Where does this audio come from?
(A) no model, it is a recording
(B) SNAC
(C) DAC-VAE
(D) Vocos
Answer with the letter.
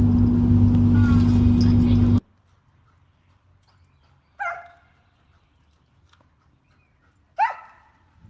A